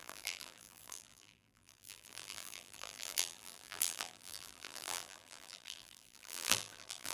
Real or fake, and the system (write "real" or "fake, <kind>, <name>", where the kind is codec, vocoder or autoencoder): fake, vocoder, BigVGAN v2